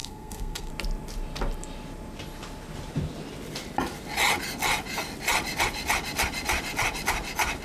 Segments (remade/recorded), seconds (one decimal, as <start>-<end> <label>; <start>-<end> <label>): 0.0-0.7 remade; 0.7-7.6 recorded